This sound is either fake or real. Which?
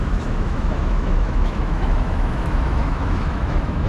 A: fake